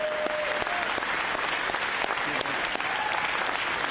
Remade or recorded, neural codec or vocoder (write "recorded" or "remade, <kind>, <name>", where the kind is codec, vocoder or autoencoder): recorded